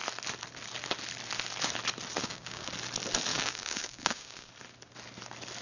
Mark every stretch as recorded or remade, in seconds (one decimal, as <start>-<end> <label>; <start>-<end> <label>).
0.0-2.2 recorded; 2.2-2.7 remade; 2.7-3.3 recorded; 3.3-4.5 remade; 4.5-5.6 recorded

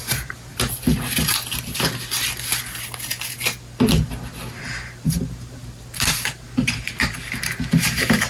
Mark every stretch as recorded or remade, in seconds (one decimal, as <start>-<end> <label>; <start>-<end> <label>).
0.0-0.5 remade; 0.5-4.6 recorded; 4.6-8.3 remade

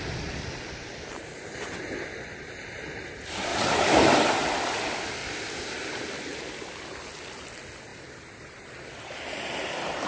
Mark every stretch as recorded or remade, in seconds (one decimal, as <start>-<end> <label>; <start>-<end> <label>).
0.0-3.5 recorded; 3.5-4.1 remade; 4.1-5.2 recorded; 5.2-6.4 remade; 6.4-7.9 recorded; 7.9-9.2 remade; 9.2-10.1 recorded